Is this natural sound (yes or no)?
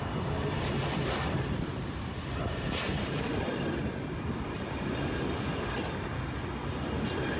yes